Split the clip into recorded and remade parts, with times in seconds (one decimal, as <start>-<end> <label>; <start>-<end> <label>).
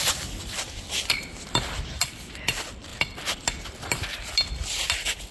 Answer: 0.0-5.3 recorded